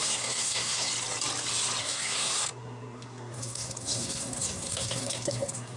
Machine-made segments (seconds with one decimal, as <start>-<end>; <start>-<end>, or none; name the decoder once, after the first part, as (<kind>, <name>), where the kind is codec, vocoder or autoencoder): 0.0-0.9 (codec, SNAC); 1.8-5.8